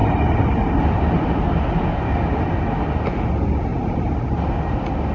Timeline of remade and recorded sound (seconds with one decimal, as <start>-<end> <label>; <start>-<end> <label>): 0.0-3.7 recorded; 3.7-4.2 remade; 4.2-5.1 recorded

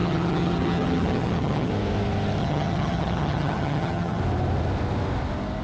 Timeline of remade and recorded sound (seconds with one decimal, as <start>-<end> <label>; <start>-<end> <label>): 0.0-1.7 remade; 1.7-2.4 recorded; 2.4-4.2 remade; 4.2-5.6 recorded